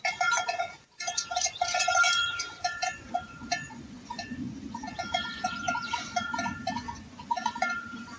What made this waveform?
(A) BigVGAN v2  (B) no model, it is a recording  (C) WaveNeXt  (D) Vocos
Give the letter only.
D